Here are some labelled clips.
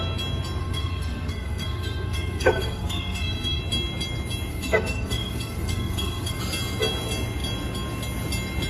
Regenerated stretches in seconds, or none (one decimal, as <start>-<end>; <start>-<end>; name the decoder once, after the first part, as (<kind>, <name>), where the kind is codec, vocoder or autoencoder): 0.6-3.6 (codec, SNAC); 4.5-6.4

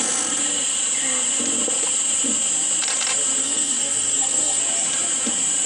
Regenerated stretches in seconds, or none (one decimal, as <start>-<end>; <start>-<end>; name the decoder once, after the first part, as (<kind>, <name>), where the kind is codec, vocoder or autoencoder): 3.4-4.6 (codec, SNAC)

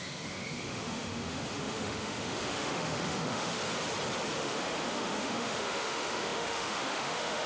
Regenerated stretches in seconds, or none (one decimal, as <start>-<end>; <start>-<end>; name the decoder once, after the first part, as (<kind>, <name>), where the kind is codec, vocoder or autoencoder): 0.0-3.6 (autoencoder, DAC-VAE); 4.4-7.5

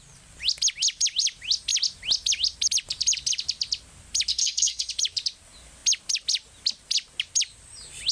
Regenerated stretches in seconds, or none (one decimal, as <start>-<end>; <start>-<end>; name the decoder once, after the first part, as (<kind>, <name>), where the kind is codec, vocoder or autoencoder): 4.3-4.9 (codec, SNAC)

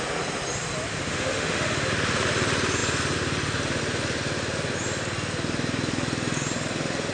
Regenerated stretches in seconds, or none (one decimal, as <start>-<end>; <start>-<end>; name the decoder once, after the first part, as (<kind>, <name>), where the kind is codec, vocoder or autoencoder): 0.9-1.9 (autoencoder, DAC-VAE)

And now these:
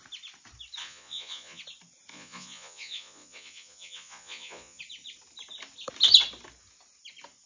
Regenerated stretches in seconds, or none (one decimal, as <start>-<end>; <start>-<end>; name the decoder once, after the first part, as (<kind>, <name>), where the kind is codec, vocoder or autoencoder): 0.8-1.6 (vocoder, Vocos); 2.1-4.8

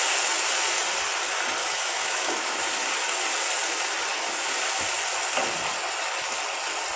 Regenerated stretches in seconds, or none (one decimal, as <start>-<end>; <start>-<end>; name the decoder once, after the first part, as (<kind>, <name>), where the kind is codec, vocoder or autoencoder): 1.6-2.6 (autoencoder, DAC-VAE)

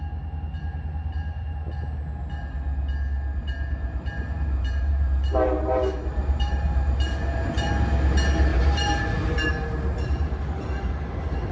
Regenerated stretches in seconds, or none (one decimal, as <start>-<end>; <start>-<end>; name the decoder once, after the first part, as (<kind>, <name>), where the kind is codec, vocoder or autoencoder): 3.3-7.7 (vocoder, BigVGAN v2); 8.5-11.5